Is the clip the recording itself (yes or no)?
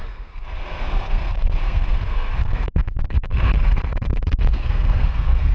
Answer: no